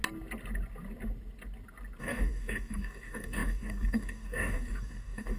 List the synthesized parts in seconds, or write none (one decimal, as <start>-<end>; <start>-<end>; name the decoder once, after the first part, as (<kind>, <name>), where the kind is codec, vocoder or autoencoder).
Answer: 2.0-5.4 (codec, DAC)